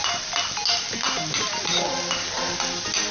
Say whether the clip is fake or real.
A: real